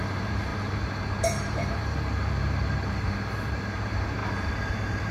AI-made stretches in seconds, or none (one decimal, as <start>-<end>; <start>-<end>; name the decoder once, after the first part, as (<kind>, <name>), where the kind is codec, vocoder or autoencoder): 0.0-0.5 (vocoder, BigVGAN v2); 1.2-5.1